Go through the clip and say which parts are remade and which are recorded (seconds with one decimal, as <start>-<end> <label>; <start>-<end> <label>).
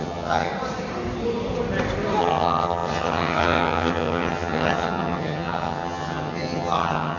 0.0-0.5 remade; 0.5-2.2 recorded; 2.2-7.2 remade